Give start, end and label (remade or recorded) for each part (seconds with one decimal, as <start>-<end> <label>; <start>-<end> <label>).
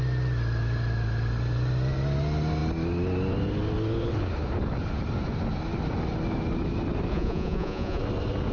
0.0-7.1 recorded; 7.1-8.0 remade; 8.0-8.5 recorded